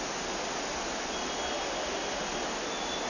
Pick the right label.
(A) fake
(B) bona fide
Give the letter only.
B